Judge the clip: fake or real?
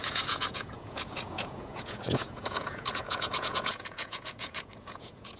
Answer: fake